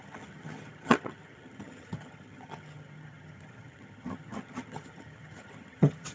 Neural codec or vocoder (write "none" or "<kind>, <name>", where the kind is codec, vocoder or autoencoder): vocoder, HiFi-GAN